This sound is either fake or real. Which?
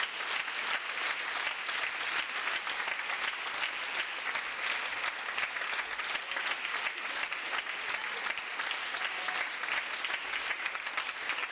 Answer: real